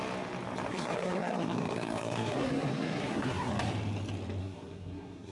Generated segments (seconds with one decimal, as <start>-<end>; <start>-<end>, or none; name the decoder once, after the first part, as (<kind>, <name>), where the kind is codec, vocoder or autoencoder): 0.7-3.5 (codec, SNAC); 4.4-5.3